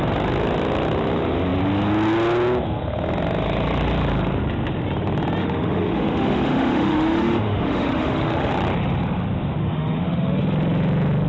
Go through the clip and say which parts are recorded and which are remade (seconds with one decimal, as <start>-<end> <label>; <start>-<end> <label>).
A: 0.0-5.4 recorded; 5.4-8.5 remade; 8.5-9.6 recorded; 9.6-10.4 remade; 10.4-11.3 recorded